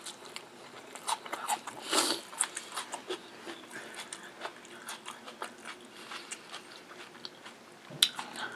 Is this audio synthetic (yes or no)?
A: no